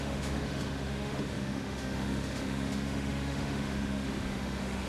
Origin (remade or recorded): remade